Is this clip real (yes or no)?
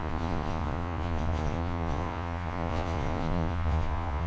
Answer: no